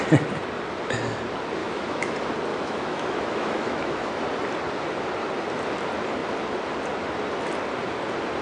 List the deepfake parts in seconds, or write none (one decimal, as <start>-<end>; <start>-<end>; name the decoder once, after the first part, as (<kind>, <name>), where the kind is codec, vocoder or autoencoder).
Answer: 1.6-2.1 (autoencoder, DAC-VAE); 2.5-4.1